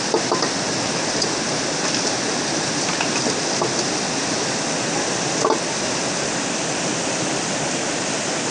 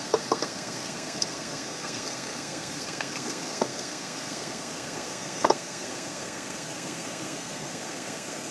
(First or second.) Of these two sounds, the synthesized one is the second